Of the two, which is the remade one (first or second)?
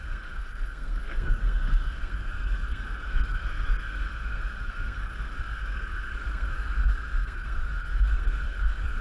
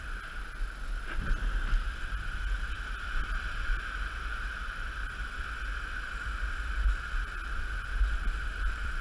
first